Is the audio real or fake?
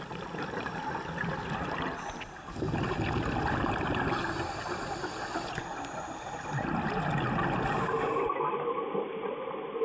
real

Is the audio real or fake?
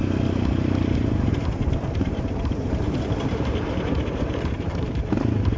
fake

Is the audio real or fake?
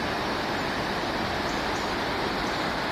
real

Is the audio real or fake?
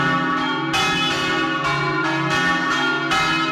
real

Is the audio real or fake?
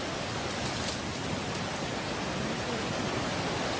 real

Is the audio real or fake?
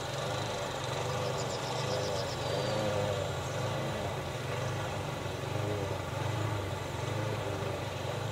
fake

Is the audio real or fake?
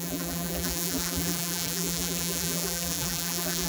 fake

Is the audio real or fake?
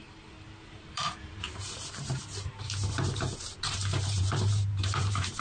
fake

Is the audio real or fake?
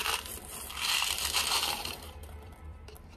fake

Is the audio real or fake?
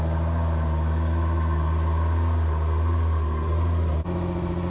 real